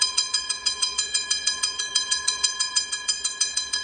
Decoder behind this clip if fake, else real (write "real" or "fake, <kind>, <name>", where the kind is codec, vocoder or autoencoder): fake, vocoder, Vocos